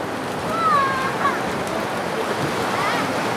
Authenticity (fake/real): real